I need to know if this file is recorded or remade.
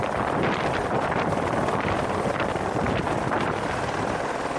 remade